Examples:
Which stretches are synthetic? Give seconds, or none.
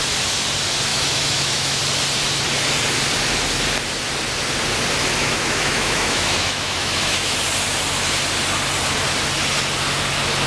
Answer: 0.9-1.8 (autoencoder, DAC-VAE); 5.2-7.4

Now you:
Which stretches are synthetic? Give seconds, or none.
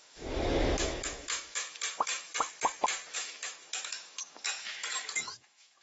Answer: 0.0-2.3 (autoencoder, DAC-VAE); 3.1-5.8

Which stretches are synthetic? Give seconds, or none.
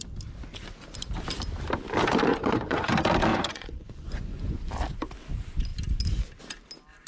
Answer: 2.3-2.9 (vocoder, Vocos); 3.3-4.7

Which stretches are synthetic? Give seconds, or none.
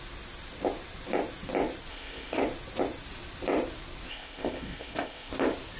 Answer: 1.9-2.4 (codec, ZipCodec); 4.1-5.3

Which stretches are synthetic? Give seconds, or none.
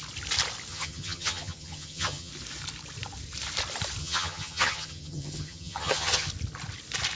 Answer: 0.7-2.3 (vocoder, HiFi-GAN); 4.0-6.3